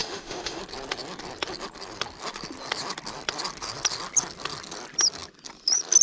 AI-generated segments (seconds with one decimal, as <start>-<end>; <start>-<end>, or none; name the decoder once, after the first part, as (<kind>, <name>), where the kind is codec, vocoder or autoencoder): 0.0-0.6 (autoencoder, DAC-VAE)